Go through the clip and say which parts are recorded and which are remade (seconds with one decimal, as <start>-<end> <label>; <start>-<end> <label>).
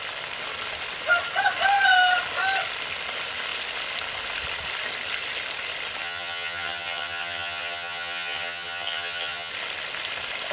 0.0-6.0 recorded; 6.0-9.5 remade; 9.5-10.5 recorded